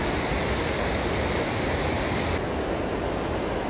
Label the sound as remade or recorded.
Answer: recorded